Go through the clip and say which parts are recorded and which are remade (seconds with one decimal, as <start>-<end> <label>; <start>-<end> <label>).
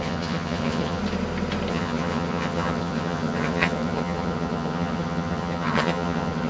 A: 0.0-1.0 remade; 1.0-1.7 recorded; 1.7-6.5 remade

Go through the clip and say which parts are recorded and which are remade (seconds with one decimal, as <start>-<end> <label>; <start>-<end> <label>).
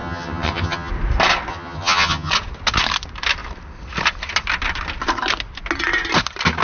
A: 0.0-0.9 remade; 0.9-1.5 recorded; 1.5-2.3 remade; 2.3-6.6 recorded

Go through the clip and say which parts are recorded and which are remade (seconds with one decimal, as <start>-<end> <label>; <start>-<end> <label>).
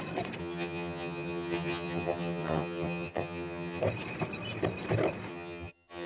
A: 0.0-0.4 recorded; 0.4-3.8 remade; 3.8-5.3 recorded; 5.3-6.1 remade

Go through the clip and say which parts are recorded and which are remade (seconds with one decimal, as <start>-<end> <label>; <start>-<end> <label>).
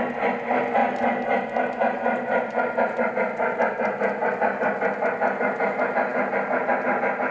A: 0.0-7.3 recorded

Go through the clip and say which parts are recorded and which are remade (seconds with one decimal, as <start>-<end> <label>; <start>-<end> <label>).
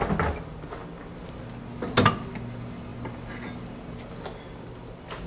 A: 0.0-5.3 recorded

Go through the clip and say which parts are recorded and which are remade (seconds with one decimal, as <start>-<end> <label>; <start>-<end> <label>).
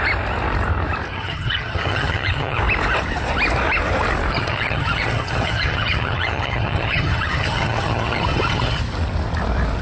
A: 0.0-1.1 recorded; 1.1-2.6 remade; 2.6-4.3 recorded; 4.3-8.8 remade; 8.8-9.8 recorded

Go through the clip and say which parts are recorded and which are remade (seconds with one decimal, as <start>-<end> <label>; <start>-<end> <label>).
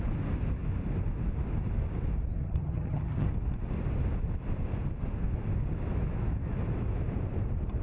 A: 0.0-2.4 recorded; 2.4-3.3 remade; 3.3-7.8 recorded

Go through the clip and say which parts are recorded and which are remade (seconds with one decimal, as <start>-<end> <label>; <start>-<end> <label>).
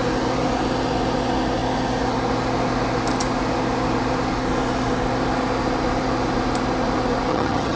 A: 0.0-7.3 recorded; 7.3-7.8 remade